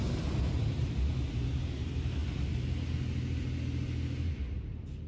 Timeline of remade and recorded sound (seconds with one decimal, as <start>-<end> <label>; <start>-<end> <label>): 0.0-5.1 recorded